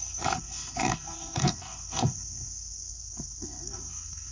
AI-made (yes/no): yes